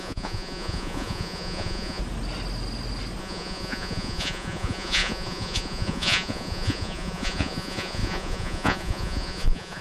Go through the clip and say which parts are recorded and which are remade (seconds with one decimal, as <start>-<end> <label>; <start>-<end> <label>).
0.0-2.0 remade; 2.0-3.2 recorded; 3.2-9.8 remade